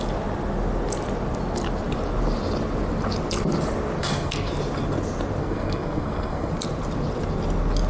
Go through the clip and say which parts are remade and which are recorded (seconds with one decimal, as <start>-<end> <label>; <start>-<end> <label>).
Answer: 0.0-4.0 recorded; 4.0-4.5 remade; 4.5-5.4 recorded; 5.4-6.5 remade; 6.5-7.9 recorded